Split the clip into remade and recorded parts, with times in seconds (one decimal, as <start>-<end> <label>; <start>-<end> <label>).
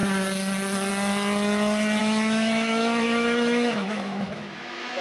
0.0-2.0 recorded; 2.0-5.0 remade